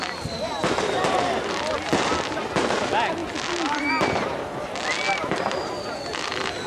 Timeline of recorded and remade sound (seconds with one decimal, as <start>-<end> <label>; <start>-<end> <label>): 0.0-6.7 recorded